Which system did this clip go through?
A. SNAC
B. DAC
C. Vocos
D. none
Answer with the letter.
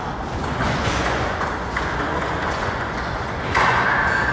C